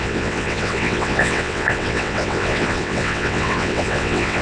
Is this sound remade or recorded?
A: remade